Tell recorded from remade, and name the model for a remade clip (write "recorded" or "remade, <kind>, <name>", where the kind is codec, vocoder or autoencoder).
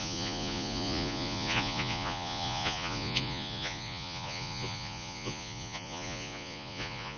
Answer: remade, vocoder, Vocos